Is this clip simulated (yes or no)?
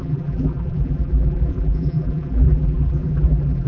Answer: yes